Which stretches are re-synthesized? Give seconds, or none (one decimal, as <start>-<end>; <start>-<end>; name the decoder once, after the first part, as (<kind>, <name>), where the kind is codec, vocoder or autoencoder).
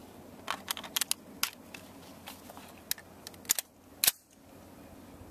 none